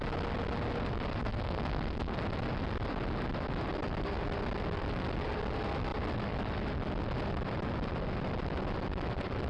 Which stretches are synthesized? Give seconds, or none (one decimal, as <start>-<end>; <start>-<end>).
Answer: 1.2-2.2